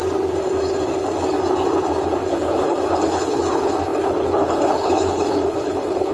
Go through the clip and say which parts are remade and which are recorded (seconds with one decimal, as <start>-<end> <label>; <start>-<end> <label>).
0.0-2.3 recorded; 2.3-6.1 remade